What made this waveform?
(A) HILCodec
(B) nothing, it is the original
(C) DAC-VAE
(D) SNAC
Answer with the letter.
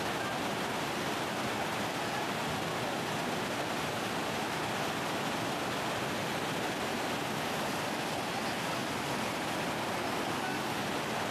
B